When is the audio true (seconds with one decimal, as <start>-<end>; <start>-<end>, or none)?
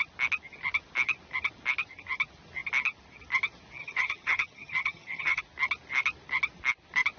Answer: 0.0-3.8; 5.4-7.2